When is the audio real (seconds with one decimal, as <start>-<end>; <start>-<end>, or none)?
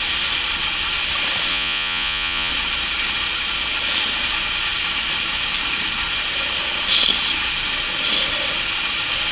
0.0-1.5; 2.5-9.3